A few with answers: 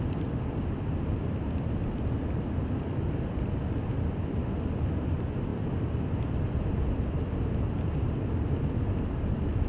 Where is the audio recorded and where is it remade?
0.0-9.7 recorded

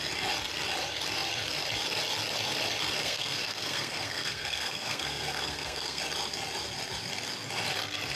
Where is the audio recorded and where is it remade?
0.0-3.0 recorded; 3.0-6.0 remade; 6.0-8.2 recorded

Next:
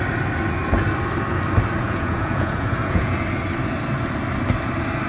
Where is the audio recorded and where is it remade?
0.0-1.8 recorded; 1.8-3.2 remade; 3.2-5.1 recorded

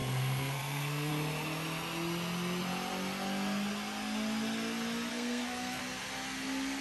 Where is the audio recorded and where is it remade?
0.0-1.1 remade; 1.1-5.1 recorded; 5.1-5.8 remade; 5.8-6.8 recorded

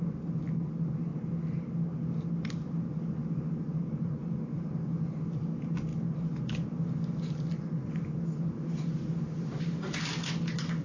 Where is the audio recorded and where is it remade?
0.0-10.8 recorded